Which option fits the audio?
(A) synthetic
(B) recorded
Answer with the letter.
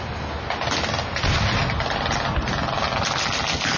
B